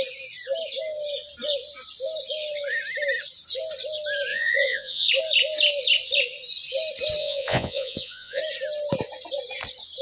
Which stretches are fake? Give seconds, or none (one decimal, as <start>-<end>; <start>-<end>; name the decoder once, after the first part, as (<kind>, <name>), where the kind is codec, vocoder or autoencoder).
4.3-5.1 (vocoder, Vocos); 7.2-8.4